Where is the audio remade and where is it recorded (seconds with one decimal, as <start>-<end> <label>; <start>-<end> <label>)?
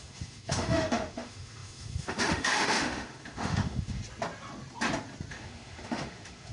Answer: 0.0-4.0 remade; 4.0-5.3 recorded; 5.3-6.5 remade